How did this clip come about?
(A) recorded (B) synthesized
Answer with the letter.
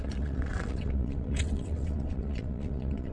B